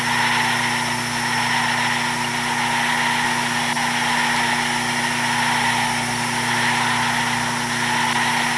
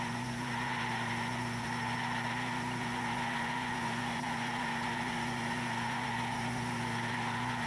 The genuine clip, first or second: first